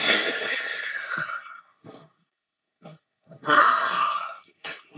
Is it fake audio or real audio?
fake